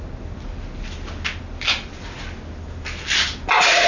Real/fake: real